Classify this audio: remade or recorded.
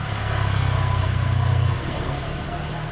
remade